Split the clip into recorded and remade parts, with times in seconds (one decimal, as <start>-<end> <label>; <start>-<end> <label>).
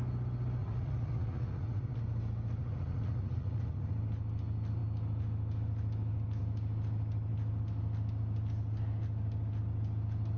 0.0-0.6 recorded; 0.6-2.0 remade; 2.0-2.6 recorded; 2.6-3.9 remade; 3.9-10.4 recorded